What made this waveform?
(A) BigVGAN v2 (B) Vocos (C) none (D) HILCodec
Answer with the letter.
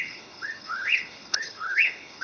D